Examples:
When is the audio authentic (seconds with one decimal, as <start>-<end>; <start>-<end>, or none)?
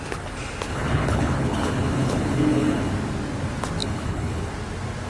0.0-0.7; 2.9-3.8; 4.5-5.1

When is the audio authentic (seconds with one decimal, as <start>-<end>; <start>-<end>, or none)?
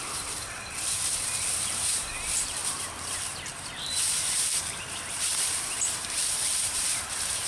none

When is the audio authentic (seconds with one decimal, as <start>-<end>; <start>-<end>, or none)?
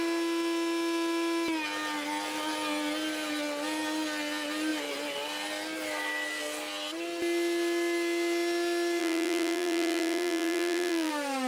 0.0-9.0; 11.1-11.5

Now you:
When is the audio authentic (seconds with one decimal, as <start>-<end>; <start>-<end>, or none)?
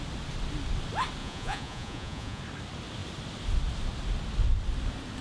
0.0-1.2; 2.4-5.2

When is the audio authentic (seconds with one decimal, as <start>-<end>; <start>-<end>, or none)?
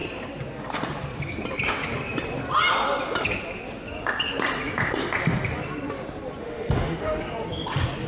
0.0-6.4; 7.2-8.1